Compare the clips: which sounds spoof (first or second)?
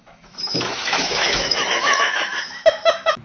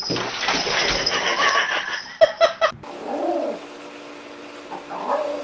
first